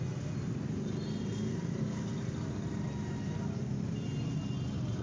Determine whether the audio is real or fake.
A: real